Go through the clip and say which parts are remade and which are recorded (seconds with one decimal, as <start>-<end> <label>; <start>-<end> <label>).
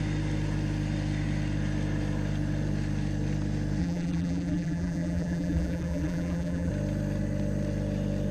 0.0-3.8 recorded; 3.8-6.7 remade; 6.7-8.3 recorded